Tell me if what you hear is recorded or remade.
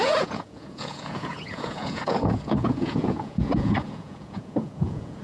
remade